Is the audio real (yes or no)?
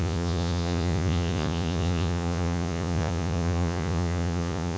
no